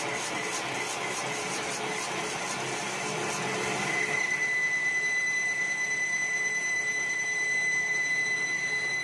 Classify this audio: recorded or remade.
recorded